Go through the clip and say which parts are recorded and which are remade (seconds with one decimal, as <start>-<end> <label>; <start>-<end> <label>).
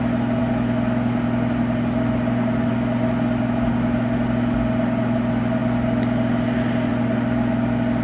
0.0-8.0 recorded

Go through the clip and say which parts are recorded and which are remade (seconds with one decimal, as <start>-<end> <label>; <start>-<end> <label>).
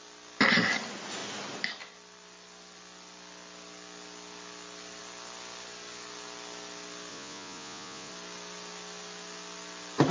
0.0-7.1 recorded; 7.1-8.1 remade; 8.1-10.1 recorded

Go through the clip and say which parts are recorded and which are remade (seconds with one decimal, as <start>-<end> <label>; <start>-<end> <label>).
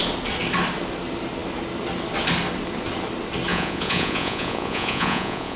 0.0-3.5 recorded; 3.5-5.6 remade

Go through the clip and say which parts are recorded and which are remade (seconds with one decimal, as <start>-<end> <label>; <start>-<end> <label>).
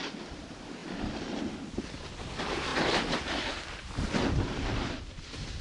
0.0-5.6 recorded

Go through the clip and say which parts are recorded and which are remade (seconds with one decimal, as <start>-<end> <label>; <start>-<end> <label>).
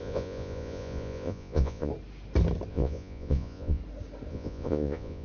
0.0-1.9 remade; 1.9-2.7 recorded; 2.7-3.8 remade; 3.8-4.3 recorded; 4.3-5.2 remade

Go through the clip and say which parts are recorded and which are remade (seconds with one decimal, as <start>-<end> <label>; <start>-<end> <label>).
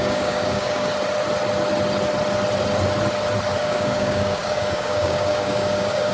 0.0-0.9 remade; 0.9-3.6 recorded; 3.6-6.1 remade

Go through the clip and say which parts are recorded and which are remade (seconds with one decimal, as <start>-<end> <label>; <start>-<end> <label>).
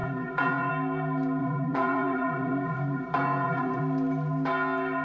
0.0-0.7 remade; 0.7-1.4 recorded; 1.4-3.8 remade; 3.8-5.0 recorded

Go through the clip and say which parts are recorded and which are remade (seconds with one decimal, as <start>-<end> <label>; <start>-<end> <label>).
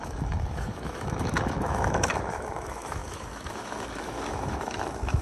0.0-5.2 remade